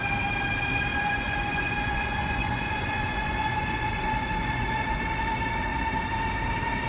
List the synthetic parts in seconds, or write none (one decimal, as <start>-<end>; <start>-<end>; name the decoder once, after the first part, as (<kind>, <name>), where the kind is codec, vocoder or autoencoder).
0.9-5.0 (vocoder, Vocos)